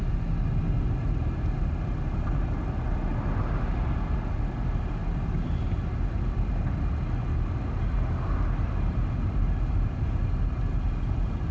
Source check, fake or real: real